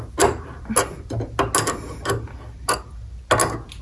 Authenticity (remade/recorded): recorded